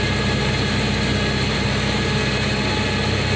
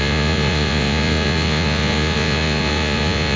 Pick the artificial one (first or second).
second